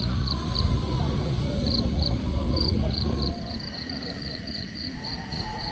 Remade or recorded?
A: remade